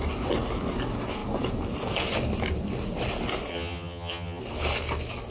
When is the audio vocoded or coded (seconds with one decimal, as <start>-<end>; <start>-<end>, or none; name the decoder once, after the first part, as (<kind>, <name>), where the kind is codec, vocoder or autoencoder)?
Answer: 3.5-4.4 (vocoder, HiFi-GAN)